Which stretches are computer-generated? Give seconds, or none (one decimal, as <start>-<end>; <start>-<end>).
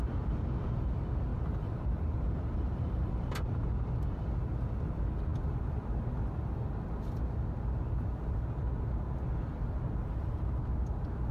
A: 1.3-3.3; 10.0-10.6